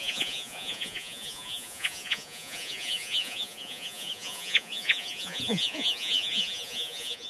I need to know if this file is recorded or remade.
remade